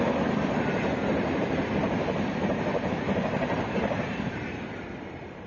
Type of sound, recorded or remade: remade